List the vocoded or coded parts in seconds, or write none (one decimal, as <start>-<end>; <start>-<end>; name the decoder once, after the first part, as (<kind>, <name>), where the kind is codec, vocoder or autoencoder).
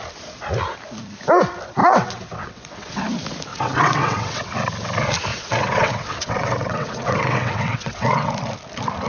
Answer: 1.8-3.0 (vocoder, WaveNeXt); 3.5-4.5; 5.3-8.3